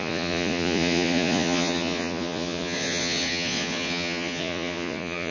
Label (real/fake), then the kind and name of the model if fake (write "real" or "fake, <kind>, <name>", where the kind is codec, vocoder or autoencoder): fake, vocoder, Vocos